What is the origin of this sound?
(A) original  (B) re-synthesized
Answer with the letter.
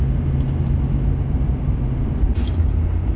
A